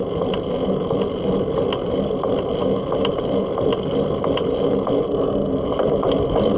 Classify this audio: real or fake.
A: real